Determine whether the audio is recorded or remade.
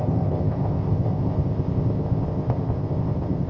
remade